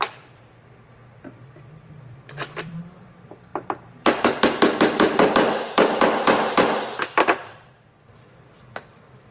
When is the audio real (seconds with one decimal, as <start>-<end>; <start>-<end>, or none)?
none